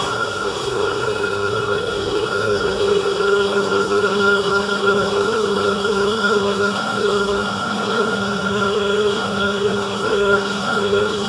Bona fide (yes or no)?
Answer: no